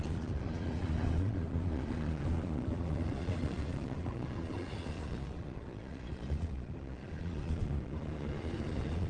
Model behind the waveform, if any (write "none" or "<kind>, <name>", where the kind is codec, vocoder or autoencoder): vocoder, Vocos